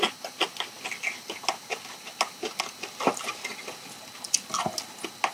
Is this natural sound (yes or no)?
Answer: yes